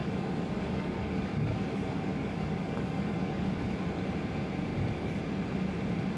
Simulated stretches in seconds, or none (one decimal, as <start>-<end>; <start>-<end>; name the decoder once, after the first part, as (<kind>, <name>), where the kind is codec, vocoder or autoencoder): 0.0-3.7 (codec, DAC); 4.7-5.2